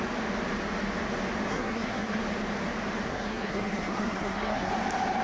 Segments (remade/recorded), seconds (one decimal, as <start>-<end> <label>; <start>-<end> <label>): 0.0-1.5 recorded; 1.5-2.2 remade; 2.2-3.1 recorded; 3.1-4.7 remade; 4.7-5.2 recorded